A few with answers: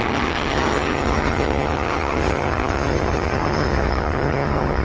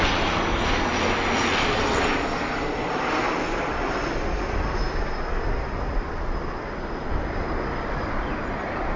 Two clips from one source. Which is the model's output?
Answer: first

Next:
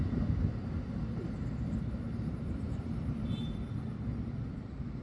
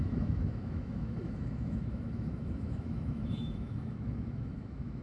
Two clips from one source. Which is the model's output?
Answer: second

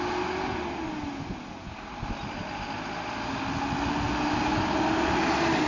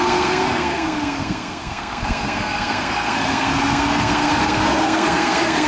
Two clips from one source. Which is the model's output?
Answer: second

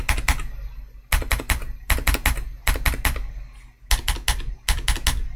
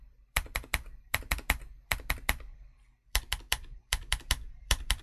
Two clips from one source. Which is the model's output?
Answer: second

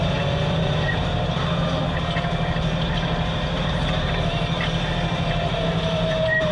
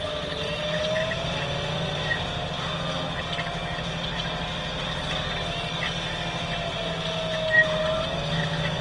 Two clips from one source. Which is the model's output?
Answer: first